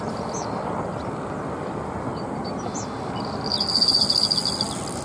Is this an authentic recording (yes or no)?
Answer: yes